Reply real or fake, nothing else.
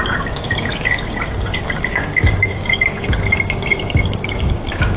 fake